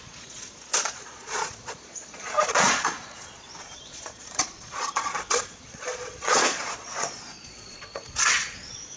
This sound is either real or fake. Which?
fake